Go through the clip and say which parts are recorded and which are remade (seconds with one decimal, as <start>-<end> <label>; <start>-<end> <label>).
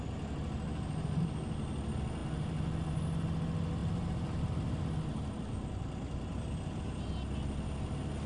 0.0-3.8 recorded; 3.8-4.8 remade; 4.8-8.3 recorded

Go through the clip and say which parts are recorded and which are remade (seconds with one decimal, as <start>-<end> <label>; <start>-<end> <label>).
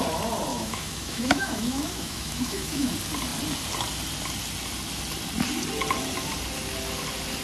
0.0-0.5 recorded; 0.5-2.9 remade; 2.9-7.4 recorded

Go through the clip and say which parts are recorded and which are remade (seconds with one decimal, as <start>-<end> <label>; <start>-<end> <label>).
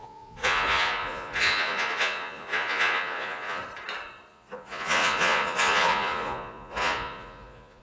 0.0-3.6 remade; 3.6-4.3 recorded; 4.3-7.8 remade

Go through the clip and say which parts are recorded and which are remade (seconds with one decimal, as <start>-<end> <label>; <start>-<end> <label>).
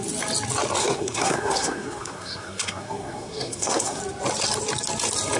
0.0-0.8 recorded; 0.8-4.0 remade; 4.0-5.4 recorded